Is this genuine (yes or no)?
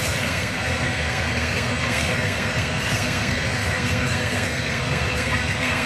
no